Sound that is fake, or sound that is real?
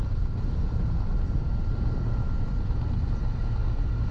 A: real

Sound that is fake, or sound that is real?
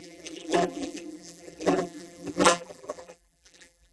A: fake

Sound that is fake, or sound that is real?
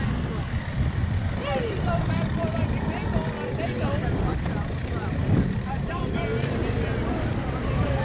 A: fake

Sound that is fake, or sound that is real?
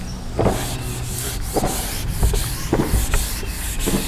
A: real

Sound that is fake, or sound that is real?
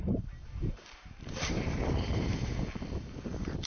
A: fake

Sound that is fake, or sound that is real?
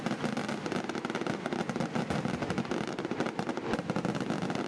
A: real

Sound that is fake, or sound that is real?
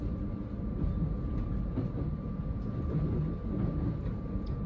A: real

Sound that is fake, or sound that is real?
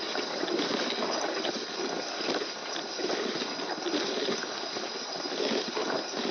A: real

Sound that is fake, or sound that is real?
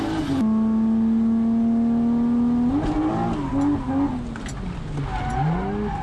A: real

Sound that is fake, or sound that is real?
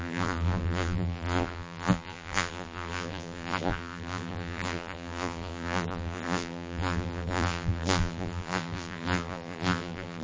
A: fake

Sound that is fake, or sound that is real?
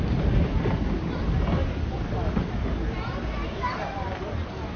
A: fake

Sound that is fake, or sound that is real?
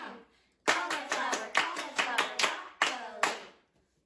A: real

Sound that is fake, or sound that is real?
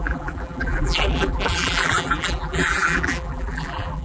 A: fake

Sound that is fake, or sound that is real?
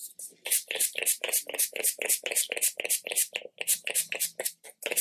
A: real